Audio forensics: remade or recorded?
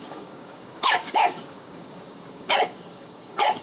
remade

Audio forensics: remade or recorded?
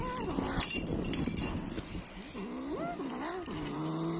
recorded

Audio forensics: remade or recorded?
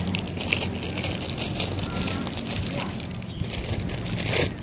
recorded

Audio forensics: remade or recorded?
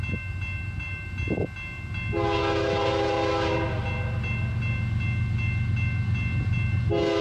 recorded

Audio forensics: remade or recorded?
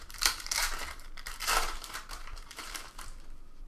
remade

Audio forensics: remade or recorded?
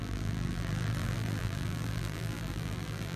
remade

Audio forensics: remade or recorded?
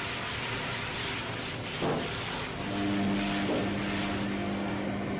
recorded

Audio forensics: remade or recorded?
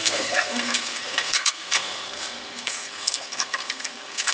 remade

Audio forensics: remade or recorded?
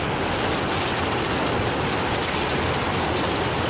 recorded